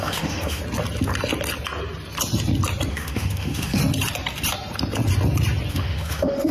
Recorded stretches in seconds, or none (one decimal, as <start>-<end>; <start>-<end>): 0.6-2.9; 3.8-5.7